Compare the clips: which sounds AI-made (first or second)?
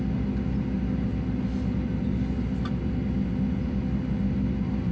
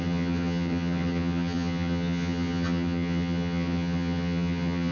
second